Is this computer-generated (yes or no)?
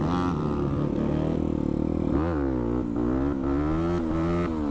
no